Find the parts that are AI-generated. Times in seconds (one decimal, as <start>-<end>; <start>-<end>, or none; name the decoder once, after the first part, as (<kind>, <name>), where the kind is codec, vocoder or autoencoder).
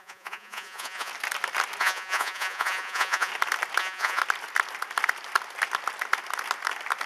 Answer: 0.0-1.1 (vocoder, Vocos); 1.8-3.3; 3.8-4.2